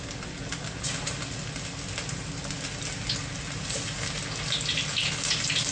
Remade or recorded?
recorded